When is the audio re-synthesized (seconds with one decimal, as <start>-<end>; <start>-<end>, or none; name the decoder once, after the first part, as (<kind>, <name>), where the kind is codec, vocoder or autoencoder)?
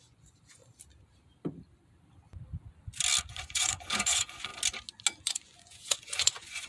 0.0-0.6 (vocoder, Vocos); 3.2-4.5; 5.2-6.7